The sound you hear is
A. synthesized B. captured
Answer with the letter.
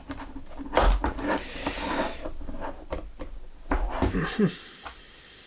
B